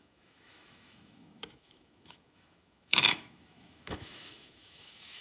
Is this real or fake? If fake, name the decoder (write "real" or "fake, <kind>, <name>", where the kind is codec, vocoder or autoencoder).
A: fake, autoencoder, DAC-VAE